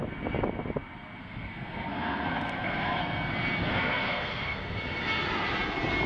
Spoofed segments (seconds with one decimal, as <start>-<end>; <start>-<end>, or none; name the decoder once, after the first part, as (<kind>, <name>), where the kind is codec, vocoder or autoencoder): 1.2-3.0 (codec, SNAC); 3.7-4.6